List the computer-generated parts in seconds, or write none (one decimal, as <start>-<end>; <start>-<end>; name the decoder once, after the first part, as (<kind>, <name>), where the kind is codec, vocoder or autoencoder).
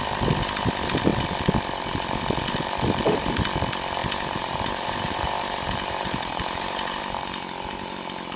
4.0-7.0 (vocoder, BigVGAN v2)